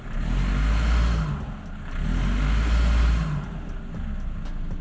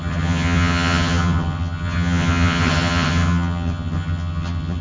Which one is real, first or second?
first